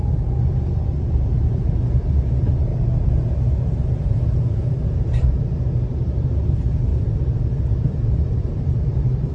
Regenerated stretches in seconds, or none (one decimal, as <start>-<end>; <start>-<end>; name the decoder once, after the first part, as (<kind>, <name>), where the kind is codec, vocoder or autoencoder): 0.0-2.7 (vocoder, BigVGAN v2); 4.7-9.3